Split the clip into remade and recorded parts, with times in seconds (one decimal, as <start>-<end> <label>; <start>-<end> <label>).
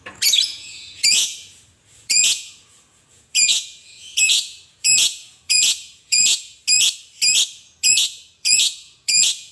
0.0-6.6 remade; 6.6-7.6 recorded; 7.6-9.5 remade